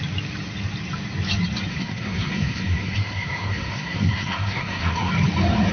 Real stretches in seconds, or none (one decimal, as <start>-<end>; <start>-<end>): 0.0-1.7; 5.1-5.7